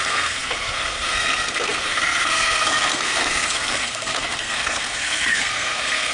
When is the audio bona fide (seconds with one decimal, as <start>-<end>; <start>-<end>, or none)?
none